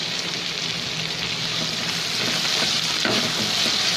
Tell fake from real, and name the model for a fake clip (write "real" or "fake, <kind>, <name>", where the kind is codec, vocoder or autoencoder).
real